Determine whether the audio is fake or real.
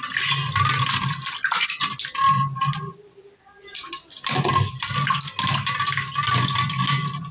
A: real